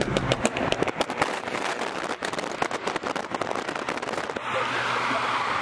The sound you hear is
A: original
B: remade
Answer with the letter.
A